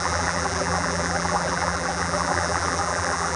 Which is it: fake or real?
fake